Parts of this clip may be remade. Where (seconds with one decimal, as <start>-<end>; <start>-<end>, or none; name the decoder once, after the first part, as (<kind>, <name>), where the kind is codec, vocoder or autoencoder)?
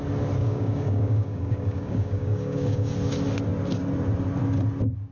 0.4-2.9 (codec, DAC)